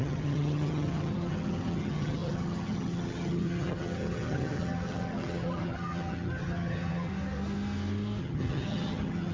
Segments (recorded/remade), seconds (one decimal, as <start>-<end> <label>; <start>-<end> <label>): 0.0-7.1 remade; 7.1-8.2 recorded; 8.2-9.3 remade